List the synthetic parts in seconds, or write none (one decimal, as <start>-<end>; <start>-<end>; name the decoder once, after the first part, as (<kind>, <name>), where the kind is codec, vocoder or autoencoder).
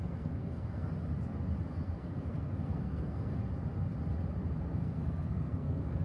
0.0-0.9 (codec, SNAC); 1.7-3.4; 4.6-6.0